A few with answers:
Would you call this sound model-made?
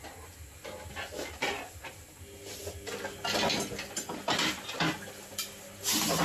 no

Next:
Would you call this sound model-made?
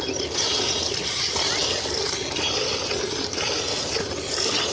no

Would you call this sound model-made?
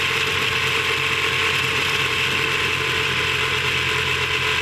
no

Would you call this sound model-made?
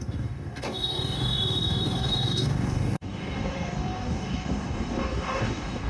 yes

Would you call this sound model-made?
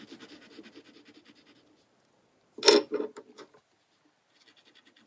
no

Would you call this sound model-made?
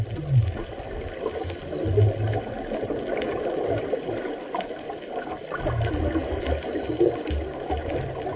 no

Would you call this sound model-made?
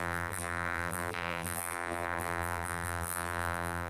yes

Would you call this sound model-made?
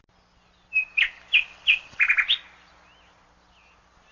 no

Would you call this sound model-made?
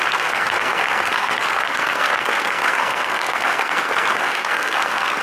yes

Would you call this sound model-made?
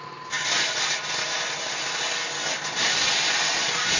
no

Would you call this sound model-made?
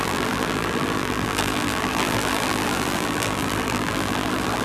yes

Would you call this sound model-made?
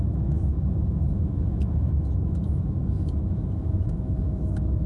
yes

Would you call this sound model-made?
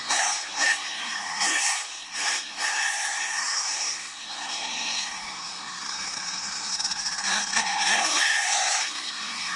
yes